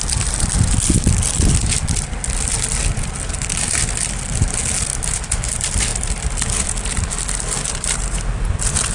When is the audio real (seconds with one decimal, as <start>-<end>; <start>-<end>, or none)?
0.0-4.9; 5.5-8.9